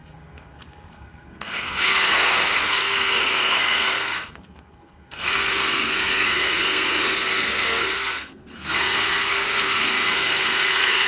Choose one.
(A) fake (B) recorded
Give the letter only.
A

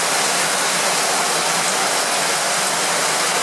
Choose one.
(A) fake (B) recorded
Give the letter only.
B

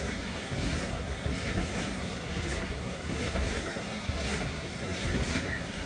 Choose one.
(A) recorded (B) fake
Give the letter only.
B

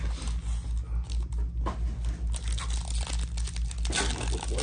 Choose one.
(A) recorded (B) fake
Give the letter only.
A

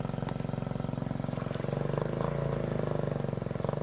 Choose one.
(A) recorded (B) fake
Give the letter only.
A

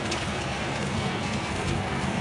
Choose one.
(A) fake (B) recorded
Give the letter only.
A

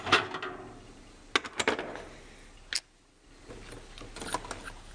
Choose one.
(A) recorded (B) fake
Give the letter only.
A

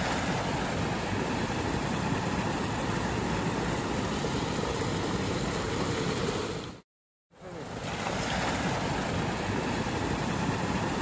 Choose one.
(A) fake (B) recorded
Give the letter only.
B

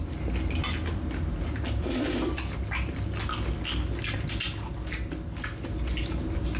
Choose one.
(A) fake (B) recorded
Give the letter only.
B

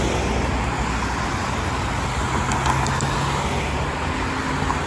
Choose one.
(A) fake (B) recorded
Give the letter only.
B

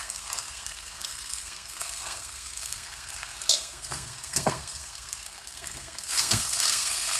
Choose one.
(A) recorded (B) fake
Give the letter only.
B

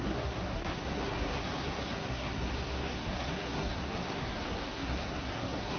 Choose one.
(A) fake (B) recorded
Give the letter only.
A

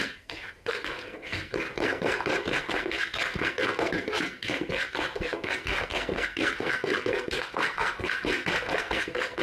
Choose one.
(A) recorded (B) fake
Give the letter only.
B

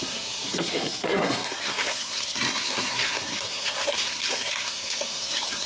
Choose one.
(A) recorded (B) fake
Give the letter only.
B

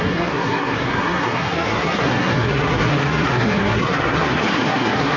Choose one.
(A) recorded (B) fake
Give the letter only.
B